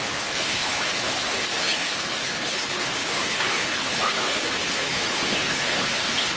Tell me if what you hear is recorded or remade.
remade